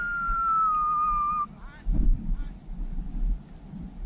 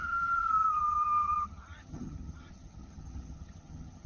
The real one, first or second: first